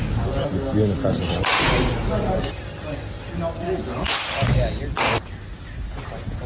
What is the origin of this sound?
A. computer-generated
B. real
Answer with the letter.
B